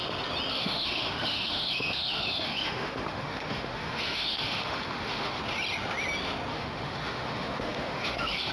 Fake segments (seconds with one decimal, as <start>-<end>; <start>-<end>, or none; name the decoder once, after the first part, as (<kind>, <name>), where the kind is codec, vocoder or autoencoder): 0.5-5.4 (autoencoder, DAC-VAE); 6.5-8.5